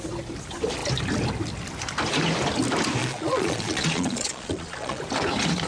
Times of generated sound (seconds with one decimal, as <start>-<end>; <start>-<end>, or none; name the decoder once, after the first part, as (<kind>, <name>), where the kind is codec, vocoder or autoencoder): 3.0-5.0 (vocoder, Vocos)